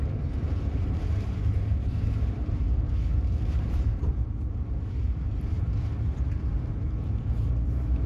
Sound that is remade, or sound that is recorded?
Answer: remade